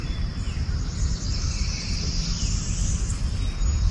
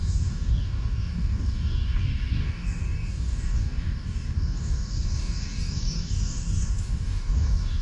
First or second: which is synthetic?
second